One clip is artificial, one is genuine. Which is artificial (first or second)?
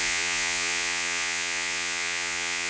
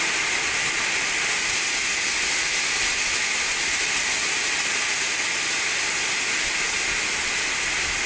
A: first